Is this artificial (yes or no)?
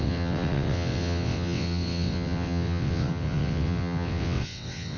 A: yes